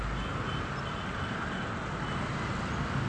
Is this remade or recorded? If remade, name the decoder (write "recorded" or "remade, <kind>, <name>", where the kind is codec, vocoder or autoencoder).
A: recorded